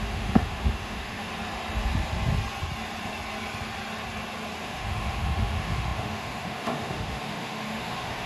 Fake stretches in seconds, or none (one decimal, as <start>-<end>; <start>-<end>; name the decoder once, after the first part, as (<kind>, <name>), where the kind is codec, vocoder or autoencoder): 0.0-1.3 (autoencoder, DAC-VAE); 4.6-8.3